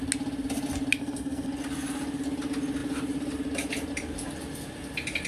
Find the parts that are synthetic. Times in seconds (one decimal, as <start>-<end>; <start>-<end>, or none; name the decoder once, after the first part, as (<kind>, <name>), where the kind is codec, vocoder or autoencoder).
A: 1.0-1.5 (codec, SNAC)